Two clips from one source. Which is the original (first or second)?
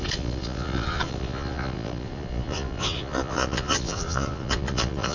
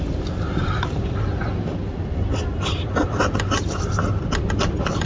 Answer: second